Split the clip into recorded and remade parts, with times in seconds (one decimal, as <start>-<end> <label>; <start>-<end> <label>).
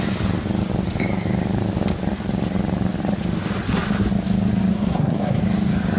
0.0-4.7 recorded; 4.7-5.4 remade; 5.4-6.0 recorded